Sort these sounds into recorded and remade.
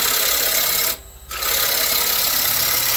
recorded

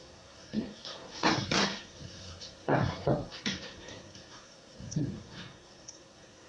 remade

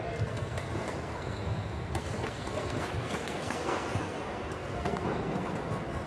remade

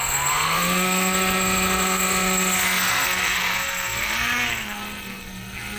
remade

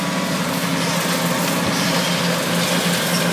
recorded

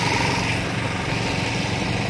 recorded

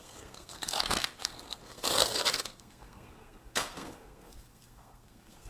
remade